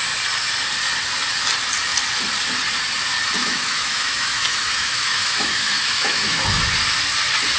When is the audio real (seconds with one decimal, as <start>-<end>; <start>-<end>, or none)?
0.0-3.4; 6.6-7.6